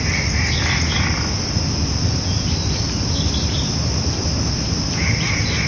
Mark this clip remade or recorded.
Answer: recorded